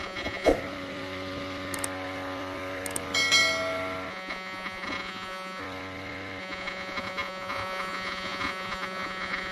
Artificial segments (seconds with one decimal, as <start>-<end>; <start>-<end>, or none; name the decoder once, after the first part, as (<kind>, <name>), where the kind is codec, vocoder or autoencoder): 0.0-0.5 (vocoder, Vocos); 4.1-5.6; 6.4-9.5